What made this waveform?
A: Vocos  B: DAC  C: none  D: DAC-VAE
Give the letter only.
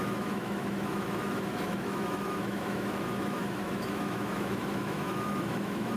D